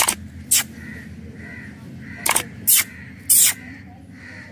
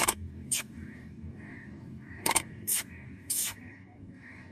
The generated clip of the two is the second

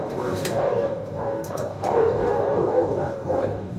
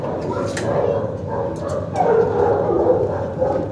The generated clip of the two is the first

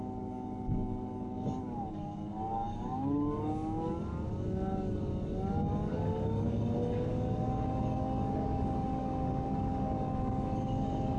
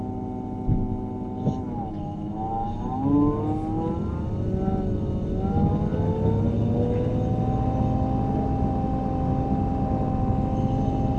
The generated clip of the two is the first